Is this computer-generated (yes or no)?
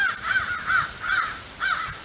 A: no